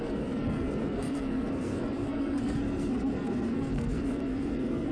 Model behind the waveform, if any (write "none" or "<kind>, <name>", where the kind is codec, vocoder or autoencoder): codec, SNAC